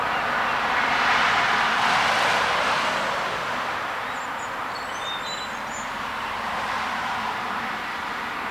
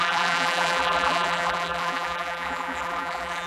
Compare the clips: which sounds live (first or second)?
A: first